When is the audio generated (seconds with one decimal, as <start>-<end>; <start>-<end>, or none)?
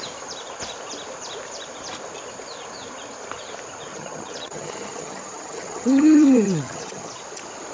3.9-7.1